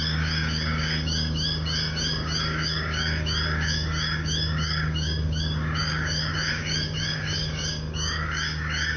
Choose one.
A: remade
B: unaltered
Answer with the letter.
A